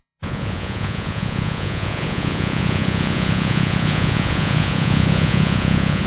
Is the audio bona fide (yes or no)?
no